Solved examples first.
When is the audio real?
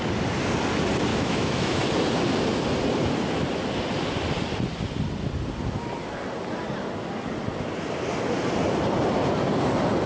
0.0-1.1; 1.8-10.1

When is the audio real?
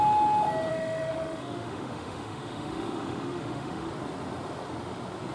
0.0-0.7; 3.9-5.3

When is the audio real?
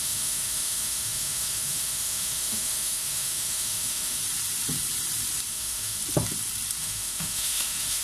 4.2-5.5; 6.0-6.8